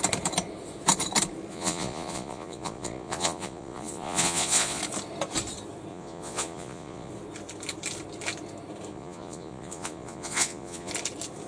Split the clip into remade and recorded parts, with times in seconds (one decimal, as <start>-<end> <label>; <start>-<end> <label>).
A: 0.0-1.5 recorded; 1.5-4.8 remade; 4.8-5.9 recorded; 5.9-7.1 remade; 7.1-8.9 recorded; 8.9-10.9 remade; 10.9-11.5 recorded